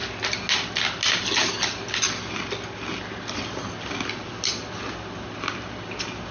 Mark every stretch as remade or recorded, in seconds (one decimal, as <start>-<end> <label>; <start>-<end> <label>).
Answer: 0.0-6.3 recorded